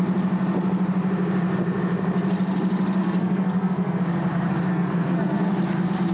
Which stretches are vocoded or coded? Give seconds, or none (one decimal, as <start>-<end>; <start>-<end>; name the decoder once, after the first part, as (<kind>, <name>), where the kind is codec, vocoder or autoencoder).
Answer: 3.0-4.0 (codec, SNAC); 4.7-5.5

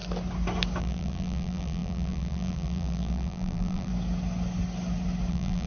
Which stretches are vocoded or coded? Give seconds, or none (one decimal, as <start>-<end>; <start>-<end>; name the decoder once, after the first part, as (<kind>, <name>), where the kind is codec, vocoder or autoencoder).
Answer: 0.8-3.9 (vocoder, BigVGAN v2); 5.3-5.7

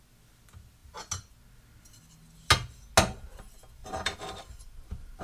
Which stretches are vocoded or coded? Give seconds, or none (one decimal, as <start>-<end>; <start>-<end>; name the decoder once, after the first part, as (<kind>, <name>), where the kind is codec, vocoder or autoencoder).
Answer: 3.8-5.2 (vocoder, BigVGAN v2)